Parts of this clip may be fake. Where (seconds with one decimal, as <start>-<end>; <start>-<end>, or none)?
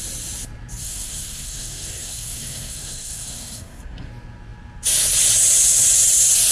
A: 0.8-4.1